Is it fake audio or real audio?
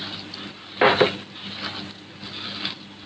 real